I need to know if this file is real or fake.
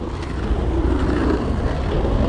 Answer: real